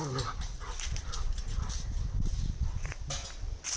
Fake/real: real